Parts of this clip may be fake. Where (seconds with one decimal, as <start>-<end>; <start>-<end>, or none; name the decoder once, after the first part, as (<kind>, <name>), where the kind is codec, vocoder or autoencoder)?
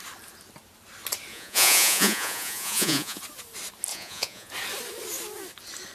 1.3-3.2 (vocoder, Vocos); 3.9-4.5